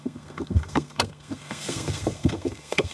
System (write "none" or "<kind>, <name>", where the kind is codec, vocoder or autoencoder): codec, SNAC